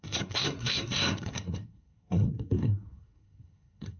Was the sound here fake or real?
fake